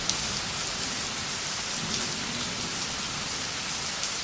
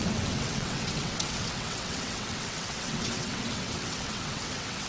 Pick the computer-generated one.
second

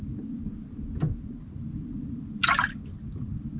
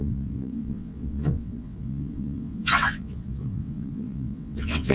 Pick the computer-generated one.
second